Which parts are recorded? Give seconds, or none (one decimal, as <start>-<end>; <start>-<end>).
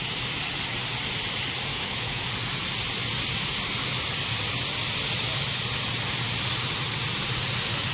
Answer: 0.0-1.7; 2.2-7.9